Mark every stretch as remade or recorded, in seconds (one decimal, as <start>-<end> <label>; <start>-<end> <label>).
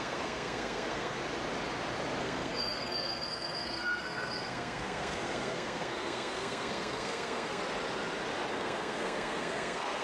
0.0-1.2 remade; 1.2-2.2 recorded; 2.2-7.6 remade; 7.6-8.5 recorded; 8.5-10.0 remade